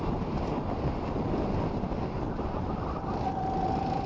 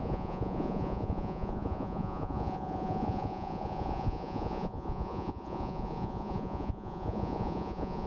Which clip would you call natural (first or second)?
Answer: first